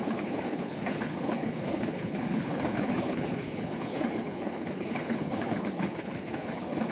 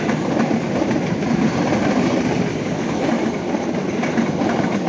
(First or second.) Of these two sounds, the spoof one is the first